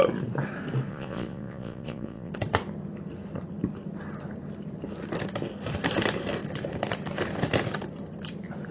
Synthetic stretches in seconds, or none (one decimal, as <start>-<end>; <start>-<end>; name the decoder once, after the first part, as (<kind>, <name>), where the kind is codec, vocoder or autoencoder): 0.9-2.3 (vocoder, Vocos)

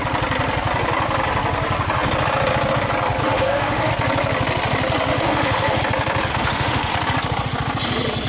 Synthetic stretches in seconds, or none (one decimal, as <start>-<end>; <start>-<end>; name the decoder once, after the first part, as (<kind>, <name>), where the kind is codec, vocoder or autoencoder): 3.2-3.9 (autoencoder, DAC-VAE); 5.1-5.8; 6.3-6.9

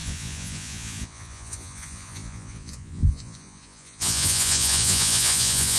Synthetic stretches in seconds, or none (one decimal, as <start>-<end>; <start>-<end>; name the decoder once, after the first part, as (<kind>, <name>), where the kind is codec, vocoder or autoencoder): 0.0-5.8 (vocoder, Vocos)

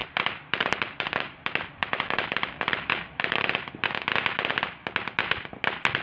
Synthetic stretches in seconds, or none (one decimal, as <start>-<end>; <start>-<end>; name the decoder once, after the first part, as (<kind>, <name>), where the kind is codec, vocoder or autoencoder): 0.0-3.6 (vocoder, BigVGAN v2)

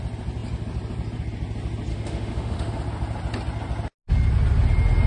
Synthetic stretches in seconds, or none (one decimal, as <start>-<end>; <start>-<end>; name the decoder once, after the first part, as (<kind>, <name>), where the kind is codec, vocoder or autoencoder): 1.9-2.8 (autoencoder, DAC-VAE)

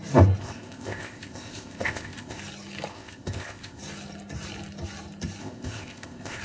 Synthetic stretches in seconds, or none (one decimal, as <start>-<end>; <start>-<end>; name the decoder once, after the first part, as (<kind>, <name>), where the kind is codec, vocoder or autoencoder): 0.4-2.4 (codec, ZipCodec); 2.9-3.8; 5.4-6.4